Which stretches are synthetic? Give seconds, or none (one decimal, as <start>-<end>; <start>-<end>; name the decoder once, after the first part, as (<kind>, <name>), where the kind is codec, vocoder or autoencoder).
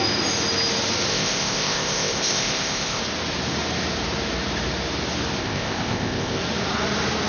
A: 1.1-3.0 (codec, ZipCodec); 5.4-6.4